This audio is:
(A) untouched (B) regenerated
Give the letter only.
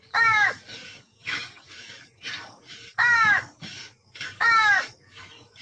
B